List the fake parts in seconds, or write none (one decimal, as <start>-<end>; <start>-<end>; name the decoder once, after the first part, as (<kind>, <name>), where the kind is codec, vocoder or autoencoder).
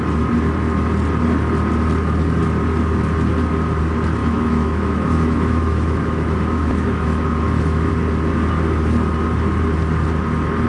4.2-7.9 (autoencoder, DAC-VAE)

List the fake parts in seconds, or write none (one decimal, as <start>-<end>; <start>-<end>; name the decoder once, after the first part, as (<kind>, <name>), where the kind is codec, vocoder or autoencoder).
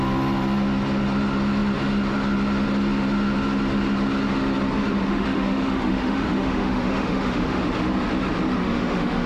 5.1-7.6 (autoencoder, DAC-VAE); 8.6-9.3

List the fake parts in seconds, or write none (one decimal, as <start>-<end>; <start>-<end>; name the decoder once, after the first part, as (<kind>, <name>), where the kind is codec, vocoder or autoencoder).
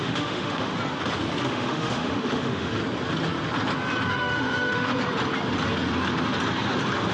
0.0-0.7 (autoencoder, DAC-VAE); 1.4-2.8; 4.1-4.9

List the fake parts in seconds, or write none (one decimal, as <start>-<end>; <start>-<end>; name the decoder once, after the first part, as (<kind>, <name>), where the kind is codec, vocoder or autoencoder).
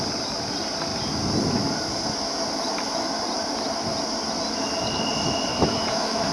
5.5-6.3 (autoencoder, DAC-VAE)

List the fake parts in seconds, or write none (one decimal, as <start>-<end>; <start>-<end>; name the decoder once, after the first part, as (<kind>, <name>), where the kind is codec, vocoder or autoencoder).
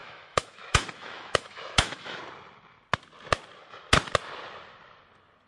0.0-2.2 (autoencoder, DAC-VAE)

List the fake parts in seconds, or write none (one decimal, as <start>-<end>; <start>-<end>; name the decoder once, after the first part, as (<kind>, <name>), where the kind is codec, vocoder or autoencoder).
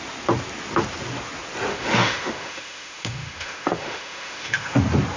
1.7-4.8 (autoencoder, DAC-VAE)